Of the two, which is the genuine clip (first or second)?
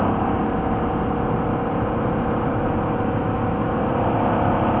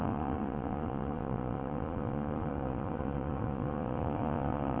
first